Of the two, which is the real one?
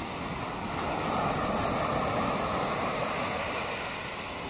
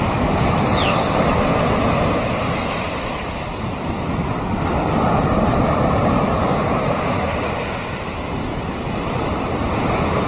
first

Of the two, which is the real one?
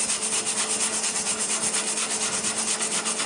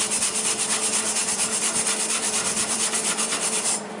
first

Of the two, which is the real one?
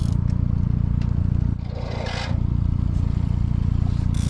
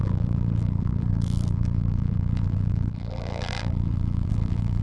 first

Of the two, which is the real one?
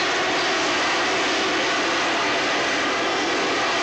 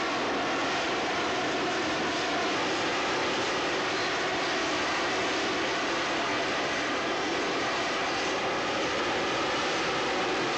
first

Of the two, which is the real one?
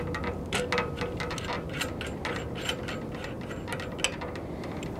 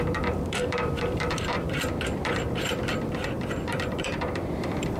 first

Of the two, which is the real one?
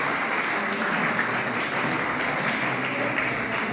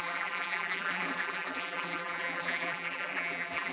first